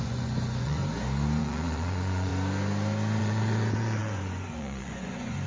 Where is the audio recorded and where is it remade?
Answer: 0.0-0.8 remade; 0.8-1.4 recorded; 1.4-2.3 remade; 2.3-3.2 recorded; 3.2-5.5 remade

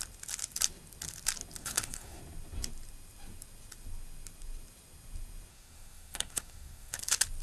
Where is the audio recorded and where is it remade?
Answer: 0.0-1.6 recorded; 1.6-2.2 remade; 2.2-5.5 recorded; 5.5-7.0 remade; 7.0-7.4 recorded

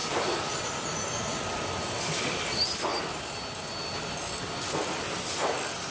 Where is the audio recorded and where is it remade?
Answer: 0.0-5.9 recorded

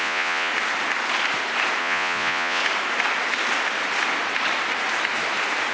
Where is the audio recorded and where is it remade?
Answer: 0.0-0.5 remade; 0.5-1.8 recorded; 1.8-2.6 remade; 2.6-5.7 recorded

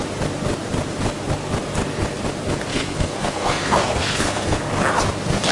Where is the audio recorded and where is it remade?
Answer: 0.0-2.7 recorded; 2.7-4.6 remade; 4.6-5.5 recorded

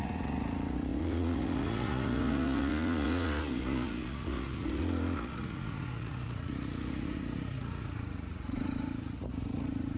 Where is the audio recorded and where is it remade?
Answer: 0.0-10.0 remade

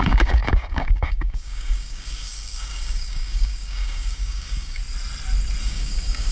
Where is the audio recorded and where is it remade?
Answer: 0.0-4.8 remade; 4.8-5.6 recorded; 5.6-6.3 remade

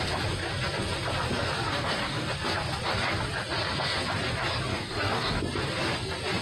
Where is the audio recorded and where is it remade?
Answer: 0.0-1.7 recorded; 1.7-2.3 remade; 2.3-4.7 recorded; 4.7-5.4 remade; 5.4-6.4 recorded